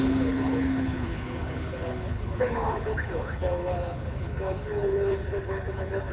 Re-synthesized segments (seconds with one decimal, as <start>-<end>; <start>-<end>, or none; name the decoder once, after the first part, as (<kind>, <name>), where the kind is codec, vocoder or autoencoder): 0.0-6.1 (codec, HILCodec)